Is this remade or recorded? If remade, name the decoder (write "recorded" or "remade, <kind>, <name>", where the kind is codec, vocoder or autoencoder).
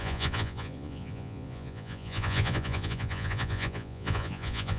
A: remade, vocoder, Vocos